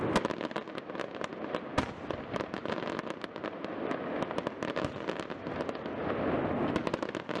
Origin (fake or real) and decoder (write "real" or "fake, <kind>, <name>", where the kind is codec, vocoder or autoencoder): real